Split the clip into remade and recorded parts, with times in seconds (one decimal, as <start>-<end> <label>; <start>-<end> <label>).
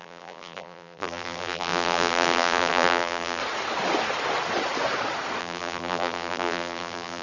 0.0-3.4 remade; 3.4-5.4 recorded; 5.4-7.2 remade